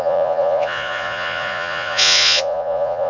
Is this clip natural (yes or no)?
no